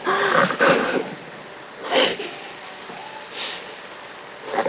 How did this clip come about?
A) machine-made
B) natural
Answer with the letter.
B